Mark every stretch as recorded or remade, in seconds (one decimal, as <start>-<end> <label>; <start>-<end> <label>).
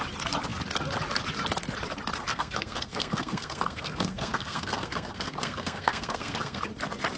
0.0-2.3 recorded; 2.3-6.6 remade; 6.6-7.2 recorded